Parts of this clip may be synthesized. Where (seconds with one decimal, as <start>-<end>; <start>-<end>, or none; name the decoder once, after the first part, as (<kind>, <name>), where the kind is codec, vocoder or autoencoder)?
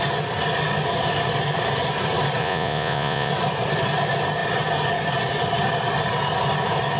2.4-3.3 (vocoder, Vocos)